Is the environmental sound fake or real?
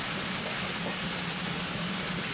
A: real